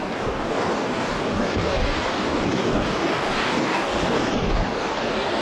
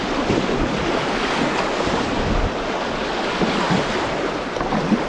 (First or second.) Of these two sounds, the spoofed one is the first